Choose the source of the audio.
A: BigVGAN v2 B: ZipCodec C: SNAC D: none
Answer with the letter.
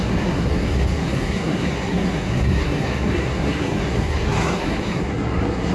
C